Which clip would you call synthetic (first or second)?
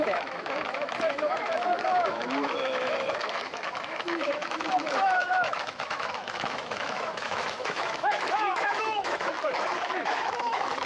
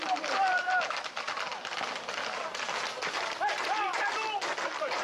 first